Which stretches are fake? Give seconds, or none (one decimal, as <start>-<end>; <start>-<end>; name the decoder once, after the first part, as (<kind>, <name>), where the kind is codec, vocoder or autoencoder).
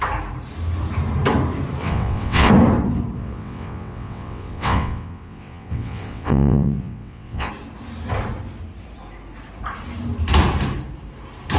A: 1.8-2.5 (vocoder, WaveNeXt); 3.2-7.5